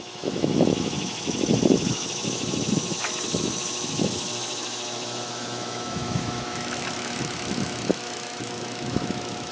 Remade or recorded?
remade